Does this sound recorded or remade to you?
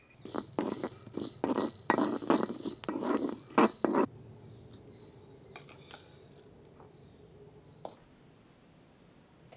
recorded